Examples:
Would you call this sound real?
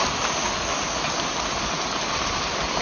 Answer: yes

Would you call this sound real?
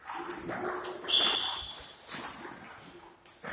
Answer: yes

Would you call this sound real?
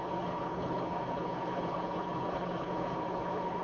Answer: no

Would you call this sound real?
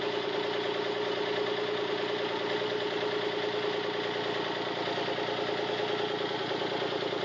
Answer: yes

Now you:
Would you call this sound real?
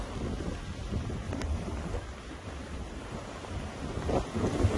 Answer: yes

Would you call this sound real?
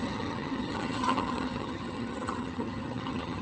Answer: no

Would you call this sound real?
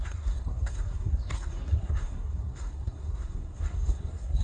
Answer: no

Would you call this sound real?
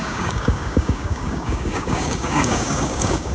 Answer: no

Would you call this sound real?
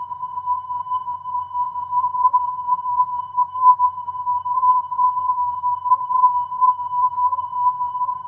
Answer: no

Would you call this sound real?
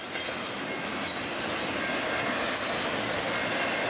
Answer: yes